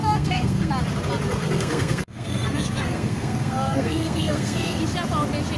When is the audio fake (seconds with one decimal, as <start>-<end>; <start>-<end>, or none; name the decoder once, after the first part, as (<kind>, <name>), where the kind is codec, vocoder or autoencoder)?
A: 0.0-0.7 (codec, SNAC); 1.4-4.8

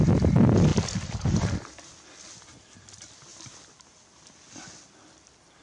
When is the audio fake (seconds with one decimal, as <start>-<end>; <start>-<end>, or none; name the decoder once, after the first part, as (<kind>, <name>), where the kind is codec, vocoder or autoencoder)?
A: none